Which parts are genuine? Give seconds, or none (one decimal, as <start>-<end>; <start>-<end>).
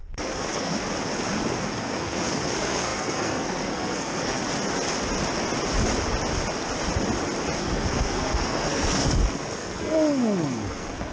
0.8-1.6; 4.4-7.6